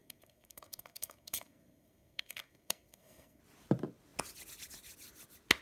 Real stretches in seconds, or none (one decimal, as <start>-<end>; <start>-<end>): 3.4-5.6